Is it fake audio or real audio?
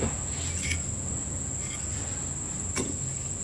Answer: real